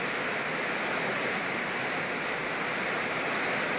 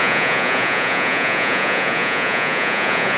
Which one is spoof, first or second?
second